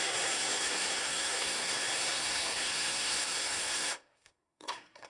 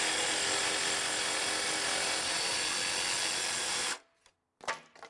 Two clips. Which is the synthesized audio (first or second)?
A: first